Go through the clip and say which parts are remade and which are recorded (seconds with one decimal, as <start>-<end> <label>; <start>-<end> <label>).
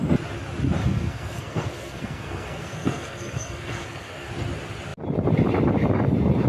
0.0-0.8 recorded; 0.8-4.3 remade; 4.3-6.5 recorded